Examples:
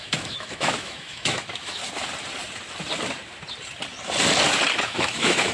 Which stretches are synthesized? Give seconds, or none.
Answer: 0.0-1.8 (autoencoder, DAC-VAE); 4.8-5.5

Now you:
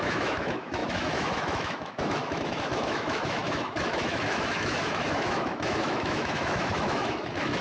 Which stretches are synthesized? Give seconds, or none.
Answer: 0.0-7.6 (autoencoder, DAC-VAE)

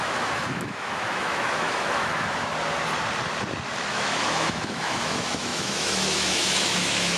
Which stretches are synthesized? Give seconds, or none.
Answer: 0.0-2.5 (autoencoder, DAC-VAE); 3.9-7.2

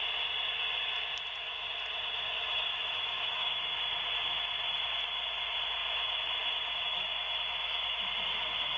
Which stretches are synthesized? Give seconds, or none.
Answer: 2.7-3.6 (autoencoder, DAC-VAE)

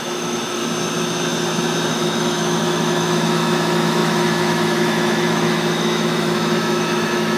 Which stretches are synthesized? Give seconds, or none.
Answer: 0.0-0.6 (autoencoder, DAC-VAE); 1.9-7.4

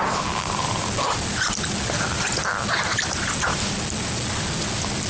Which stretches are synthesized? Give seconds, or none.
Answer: none

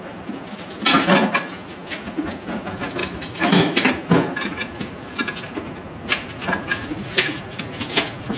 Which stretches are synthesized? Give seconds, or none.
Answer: 3.0-3.9 (autoencoder, DAC-VAE)

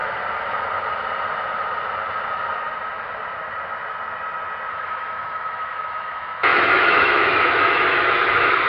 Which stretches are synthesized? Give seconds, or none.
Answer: 4.7-8.7 (autoencoder, DAC-VAE)